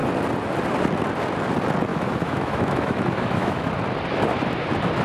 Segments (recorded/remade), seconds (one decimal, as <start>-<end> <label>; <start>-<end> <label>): 0.0-1.9 recorded; 1.9-3.7 remade; 3.7-5.0 recorded